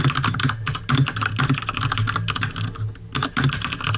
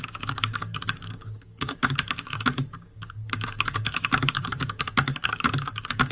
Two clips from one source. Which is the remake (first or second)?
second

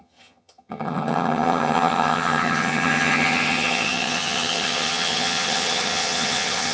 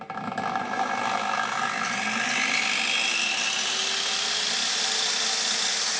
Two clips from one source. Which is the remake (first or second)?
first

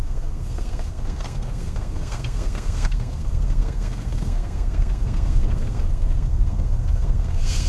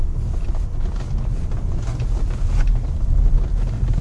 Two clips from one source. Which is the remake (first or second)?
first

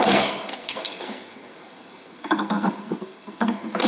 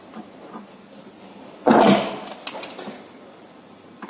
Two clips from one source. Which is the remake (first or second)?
first